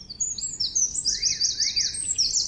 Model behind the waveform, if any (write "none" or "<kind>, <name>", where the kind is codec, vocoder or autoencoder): none